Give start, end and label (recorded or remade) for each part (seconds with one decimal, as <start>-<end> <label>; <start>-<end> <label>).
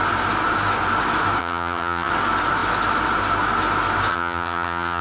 0.0-1.4 recorded; 1.4-2.1 remade; 2.1-4.1 recorded; 4.1-5.0 remade